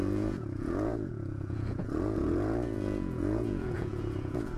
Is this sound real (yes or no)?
no